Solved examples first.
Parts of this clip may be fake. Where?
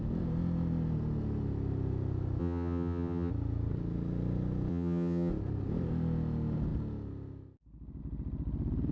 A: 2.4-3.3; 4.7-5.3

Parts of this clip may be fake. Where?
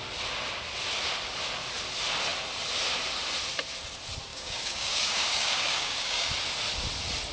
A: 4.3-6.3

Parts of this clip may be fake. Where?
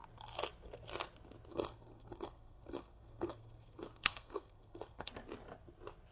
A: 1.5-5.1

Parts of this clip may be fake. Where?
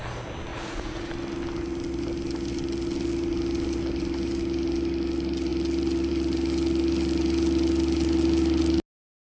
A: 0.5-1.1